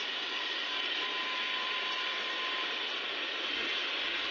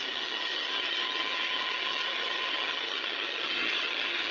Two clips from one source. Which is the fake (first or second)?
second